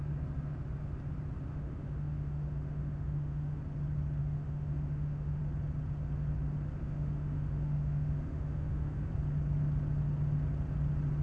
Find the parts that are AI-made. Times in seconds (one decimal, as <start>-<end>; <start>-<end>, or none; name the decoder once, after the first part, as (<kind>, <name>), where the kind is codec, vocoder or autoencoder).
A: 1.5-3.6 (autoencoder, DAC-VAE); 4.2-5.4; 6.8-9.1